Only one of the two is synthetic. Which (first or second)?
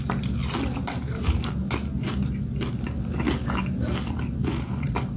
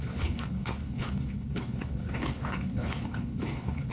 second